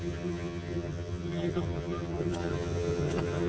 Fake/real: fake